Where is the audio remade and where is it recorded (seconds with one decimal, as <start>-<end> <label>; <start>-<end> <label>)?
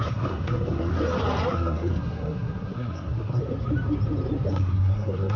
0.0-0.9 remade; 0.9-1.5 recorded; 1.5-3.4 remade; 3.4-4.5 recorded; 4.5-5.4 remade